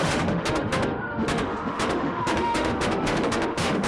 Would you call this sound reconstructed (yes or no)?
yes